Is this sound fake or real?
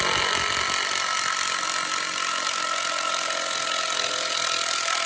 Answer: real